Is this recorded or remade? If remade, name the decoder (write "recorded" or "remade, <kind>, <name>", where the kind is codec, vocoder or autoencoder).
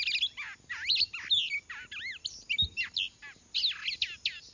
recorded